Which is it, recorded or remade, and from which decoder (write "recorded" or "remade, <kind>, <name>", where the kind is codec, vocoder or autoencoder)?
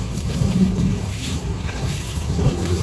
remade, codec, SNAC